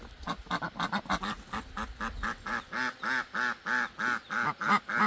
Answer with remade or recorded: recorded